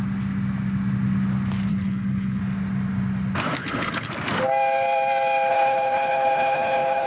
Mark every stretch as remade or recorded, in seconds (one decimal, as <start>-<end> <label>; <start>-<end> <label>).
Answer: 0.0-1.7 recorded; 1.7-2.4 remade; 2.4-3.6 recorded; 3.6-4.1 remade; 4.1-5.5 recorded; 5.5-7.1 remade

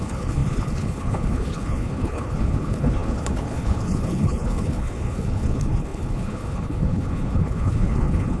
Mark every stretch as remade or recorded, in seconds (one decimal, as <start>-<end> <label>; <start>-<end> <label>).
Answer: 0.0-8.4 remade

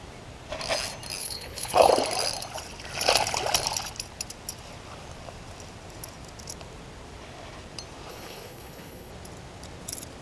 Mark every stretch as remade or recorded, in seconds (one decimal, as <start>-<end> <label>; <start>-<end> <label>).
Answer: 0.0-1.2 recorded; 1.2-1.9 remade; 1.9-8.1 recorded; 8.1-9.1 remade; 9.1-10.2 recorded

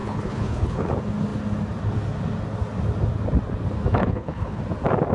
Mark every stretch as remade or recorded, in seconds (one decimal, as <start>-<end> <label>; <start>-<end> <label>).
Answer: 0.0-0.9 remade; 0.9-4.0 recorded; 4.0-4.6 remade; 4.6-5.1 recorded

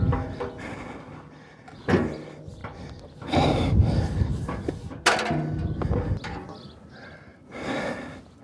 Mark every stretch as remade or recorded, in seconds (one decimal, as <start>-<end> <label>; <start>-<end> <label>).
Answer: 0.0-8.4 recorded